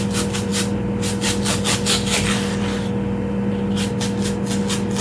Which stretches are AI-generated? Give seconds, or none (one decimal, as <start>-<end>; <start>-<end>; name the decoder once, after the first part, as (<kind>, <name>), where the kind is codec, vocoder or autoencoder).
none